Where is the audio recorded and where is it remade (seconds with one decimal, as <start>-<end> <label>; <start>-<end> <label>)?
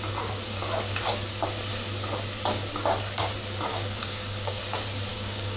0.0-3.7 recorded; 3.7-4.6 remade; 4.6-5.1 recorded; 5.1-5.6 remade